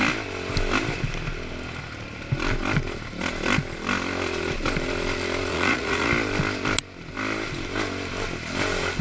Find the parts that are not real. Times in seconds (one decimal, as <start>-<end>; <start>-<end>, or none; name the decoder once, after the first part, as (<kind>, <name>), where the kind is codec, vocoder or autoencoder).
5.5-6.1 (vocoder, Vocos)